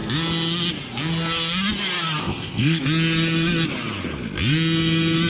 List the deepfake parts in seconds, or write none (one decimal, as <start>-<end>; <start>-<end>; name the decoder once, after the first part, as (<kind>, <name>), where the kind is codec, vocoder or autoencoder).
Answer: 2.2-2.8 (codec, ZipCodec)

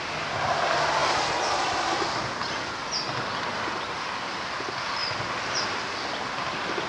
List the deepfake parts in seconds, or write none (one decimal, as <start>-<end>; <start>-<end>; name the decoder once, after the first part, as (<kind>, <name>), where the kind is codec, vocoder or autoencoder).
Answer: none

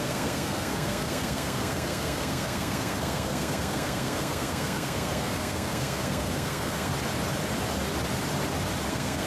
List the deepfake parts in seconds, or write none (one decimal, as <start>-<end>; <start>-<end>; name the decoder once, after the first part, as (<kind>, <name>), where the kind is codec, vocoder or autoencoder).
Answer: 0.0-6.9 (codec, SNAC); 8.9-9.3

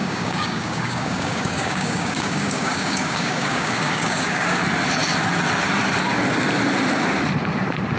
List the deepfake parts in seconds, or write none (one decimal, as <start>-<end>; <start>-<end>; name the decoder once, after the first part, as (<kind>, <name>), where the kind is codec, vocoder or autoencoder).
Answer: 0.0-4.6 (codec, DAC)

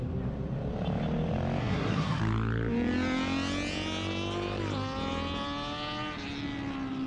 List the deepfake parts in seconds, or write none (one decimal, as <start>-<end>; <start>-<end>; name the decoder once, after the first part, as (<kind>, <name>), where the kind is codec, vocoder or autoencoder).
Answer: 1.6-2.2 (codec, SNAC)